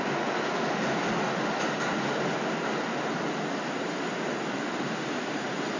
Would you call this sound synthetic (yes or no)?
no